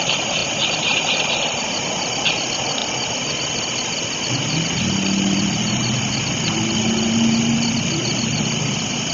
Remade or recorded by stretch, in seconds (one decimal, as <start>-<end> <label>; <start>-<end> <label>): 0.0-9.1 recorded

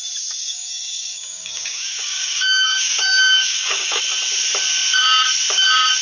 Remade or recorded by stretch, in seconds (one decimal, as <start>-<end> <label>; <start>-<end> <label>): 0.0-0.4 recorded; 0.4-4.0 remade; 4.0-6.0 recorded